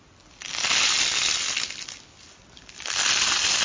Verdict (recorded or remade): recorded